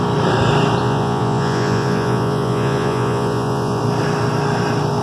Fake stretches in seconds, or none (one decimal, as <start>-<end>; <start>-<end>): 0.8-3.8